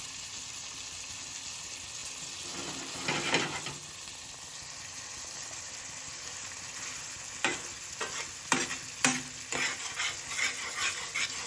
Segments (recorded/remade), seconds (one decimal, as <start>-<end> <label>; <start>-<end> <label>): 0.0-11.5 recorded